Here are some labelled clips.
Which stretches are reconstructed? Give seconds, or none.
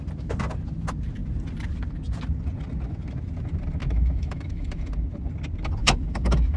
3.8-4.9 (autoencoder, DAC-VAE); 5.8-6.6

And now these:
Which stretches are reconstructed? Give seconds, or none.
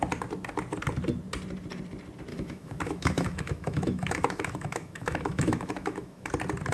2.3-6.3 (autoencoder, DAC-VAE)